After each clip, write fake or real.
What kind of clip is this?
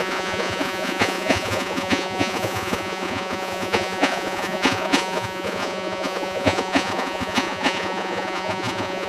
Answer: fake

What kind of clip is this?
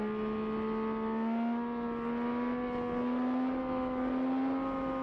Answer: real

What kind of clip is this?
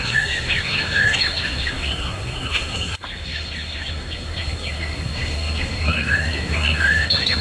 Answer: fake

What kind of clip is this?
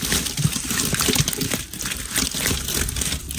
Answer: real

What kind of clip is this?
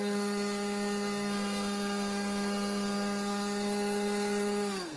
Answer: fake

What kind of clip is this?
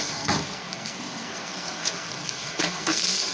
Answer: fake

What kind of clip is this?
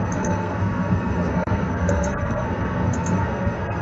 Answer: fake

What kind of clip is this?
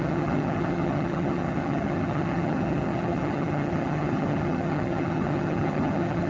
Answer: fake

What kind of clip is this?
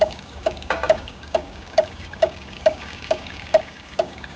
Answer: fake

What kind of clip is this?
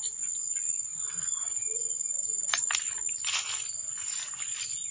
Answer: real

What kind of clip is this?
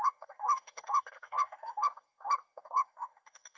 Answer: fake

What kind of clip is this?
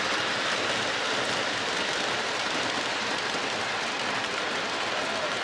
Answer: real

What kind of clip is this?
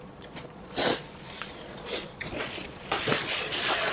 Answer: fake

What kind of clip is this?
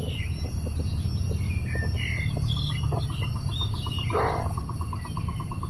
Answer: real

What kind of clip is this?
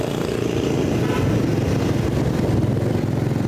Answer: real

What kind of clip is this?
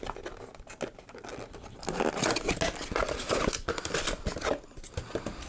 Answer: real